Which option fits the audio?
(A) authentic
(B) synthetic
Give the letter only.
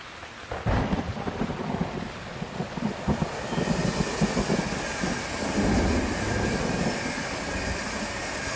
A